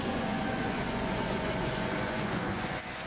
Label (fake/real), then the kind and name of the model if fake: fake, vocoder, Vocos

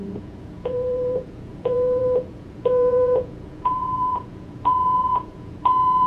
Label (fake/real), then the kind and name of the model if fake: fake, vocoder, Vocos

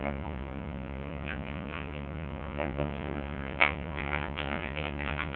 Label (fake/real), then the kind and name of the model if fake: fake, vocoder, Vocos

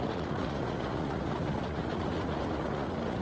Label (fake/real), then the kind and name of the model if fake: fake, vocoder, Vocos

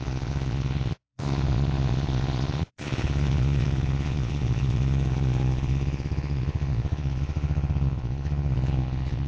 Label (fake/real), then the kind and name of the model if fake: fake, vocoder, Vocos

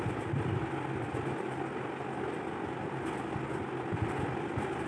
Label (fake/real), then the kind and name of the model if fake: real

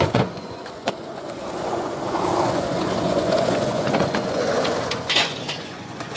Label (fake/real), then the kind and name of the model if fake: fake, vocoder, Vocos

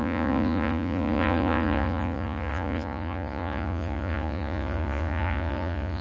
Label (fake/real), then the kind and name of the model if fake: fake, vocoder, Vocos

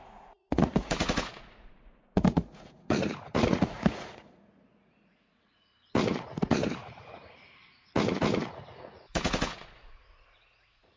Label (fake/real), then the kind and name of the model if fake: fake, vocoder, Vocos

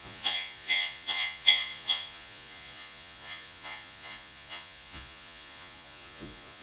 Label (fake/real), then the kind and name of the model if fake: fake, vocoder, Vocos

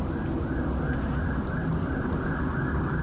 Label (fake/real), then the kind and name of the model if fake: real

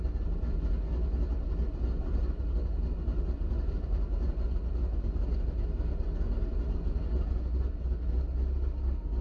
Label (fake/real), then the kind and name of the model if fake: real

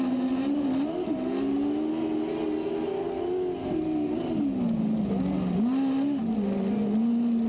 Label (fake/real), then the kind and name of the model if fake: real